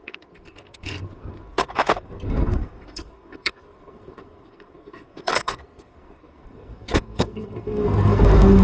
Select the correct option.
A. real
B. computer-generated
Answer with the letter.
B